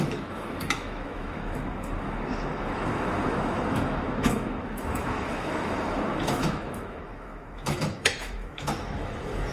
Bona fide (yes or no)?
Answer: no